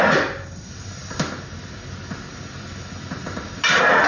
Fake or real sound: real